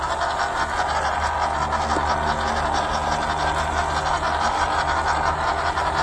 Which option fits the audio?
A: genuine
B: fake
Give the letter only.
A